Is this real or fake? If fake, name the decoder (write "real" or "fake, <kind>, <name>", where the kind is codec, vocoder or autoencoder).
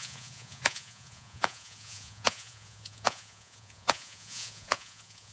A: fake, vocoder, Vocos